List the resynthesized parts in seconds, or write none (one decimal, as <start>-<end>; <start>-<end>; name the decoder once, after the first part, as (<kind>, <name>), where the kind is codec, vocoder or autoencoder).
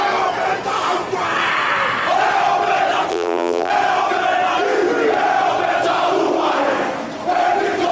3.1-3.7 (vocoder, BigVGAN v2)